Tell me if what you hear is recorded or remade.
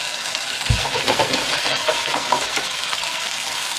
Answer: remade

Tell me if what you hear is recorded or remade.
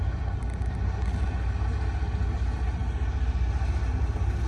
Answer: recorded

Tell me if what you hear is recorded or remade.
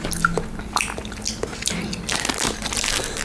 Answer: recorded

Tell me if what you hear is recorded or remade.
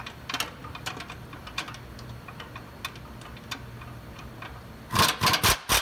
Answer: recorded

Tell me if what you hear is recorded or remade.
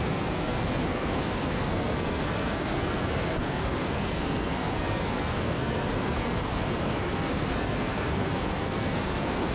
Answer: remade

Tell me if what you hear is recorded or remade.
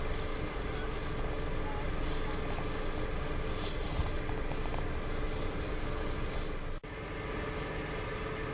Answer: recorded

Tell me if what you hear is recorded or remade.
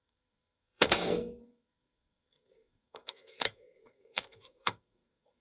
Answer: remade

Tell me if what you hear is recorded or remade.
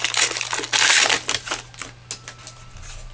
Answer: recorded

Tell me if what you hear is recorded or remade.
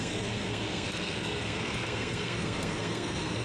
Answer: remade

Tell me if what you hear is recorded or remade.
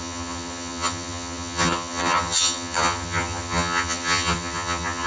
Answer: remade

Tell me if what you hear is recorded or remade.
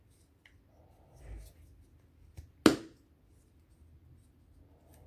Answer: recorded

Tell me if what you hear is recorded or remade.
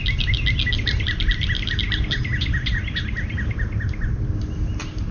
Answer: recorded